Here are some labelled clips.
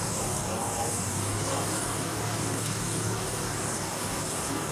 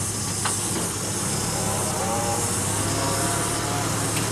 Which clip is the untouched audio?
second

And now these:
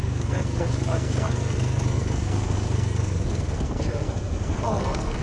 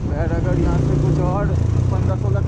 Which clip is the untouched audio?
second